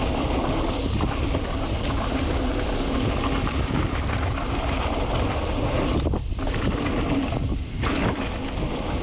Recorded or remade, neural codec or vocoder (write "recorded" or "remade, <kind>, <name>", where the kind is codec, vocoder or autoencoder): recorded